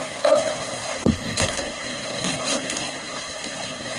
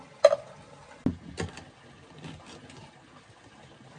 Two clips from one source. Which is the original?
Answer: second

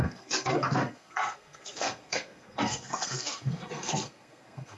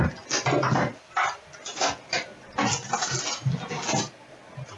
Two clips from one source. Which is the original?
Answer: second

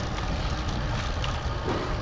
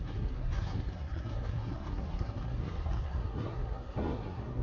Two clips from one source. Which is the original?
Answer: first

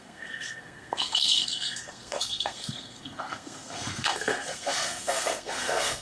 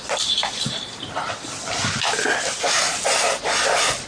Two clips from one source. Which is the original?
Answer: second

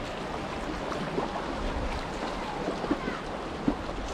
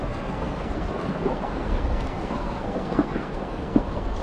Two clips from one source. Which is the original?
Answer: first